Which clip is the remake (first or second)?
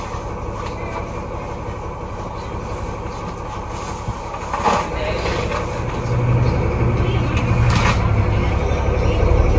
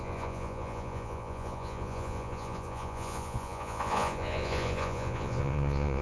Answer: second